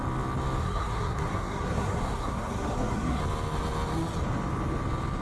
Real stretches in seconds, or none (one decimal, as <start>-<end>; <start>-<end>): 0.0-0.6; 3.2-5.2